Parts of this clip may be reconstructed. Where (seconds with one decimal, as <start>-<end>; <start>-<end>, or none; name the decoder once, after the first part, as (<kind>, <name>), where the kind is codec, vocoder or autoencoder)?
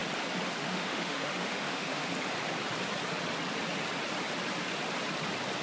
0.6-2.1 (autoencoder, DAC-VAE)